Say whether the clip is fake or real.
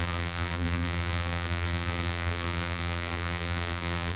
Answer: fake